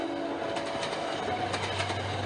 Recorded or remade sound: recorded